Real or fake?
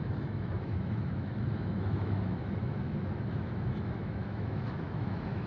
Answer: fake